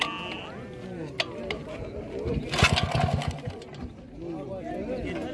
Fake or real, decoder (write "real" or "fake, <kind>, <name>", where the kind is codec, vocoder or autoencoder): real